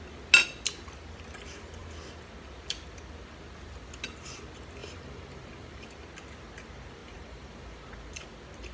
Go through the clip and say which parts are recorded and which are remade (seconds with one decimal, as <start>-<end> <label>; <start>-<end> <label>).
0.0-4.8 recorded; 4.8-5.9 remade; 5.9-7.0 recorded; 7.0-7.8 remade; 7.8-8.7 recorded